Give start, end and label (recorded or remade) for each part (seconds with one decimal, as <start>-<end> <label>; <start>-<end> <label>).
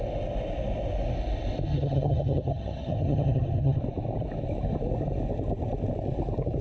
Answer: 0.0-1.7 recorded; 1.7-3.8 remade; 3.8-6.6 recorded